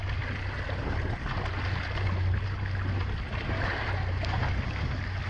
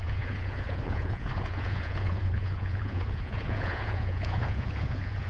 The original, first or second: first